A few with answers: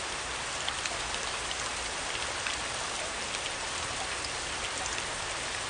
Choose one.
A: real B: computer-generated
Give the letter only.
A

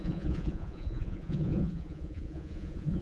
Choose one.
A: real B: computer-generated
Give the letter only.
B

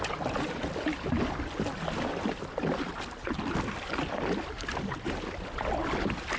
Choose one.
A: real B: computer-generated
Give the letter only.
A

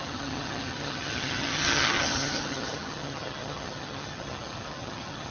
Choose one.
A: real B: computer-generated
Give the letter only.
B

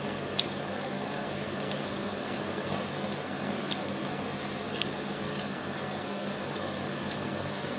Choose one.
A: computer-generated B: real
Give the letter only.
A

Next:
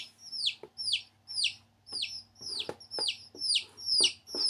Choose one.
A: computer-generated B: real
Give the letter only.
B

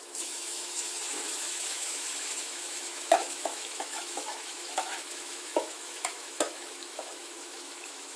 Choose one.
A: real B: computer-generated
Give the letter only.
B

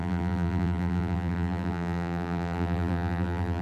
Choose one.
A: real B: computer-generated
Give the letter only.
B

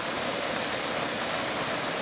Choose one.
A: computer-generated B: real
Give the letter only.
B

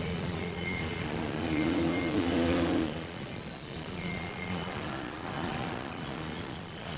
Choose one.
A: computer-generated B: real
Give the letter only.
A